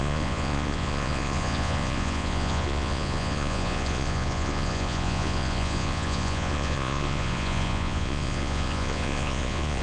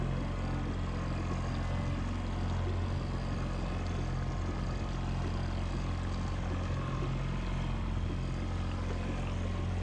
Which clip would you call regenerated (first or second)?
first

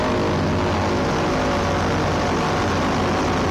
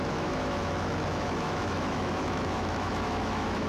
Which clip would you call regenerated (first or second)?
second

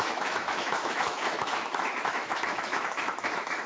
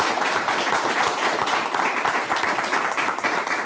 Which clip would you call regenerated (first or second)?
first